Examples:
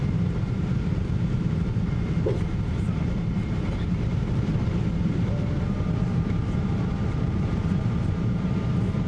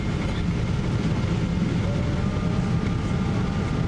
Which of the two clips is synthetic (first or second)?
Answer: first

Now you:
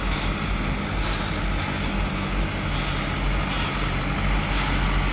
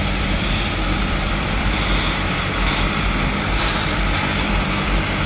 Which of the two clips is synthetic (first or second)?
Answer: second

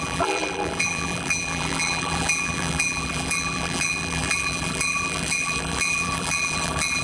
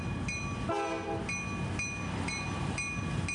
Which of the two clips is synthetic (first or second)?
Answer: first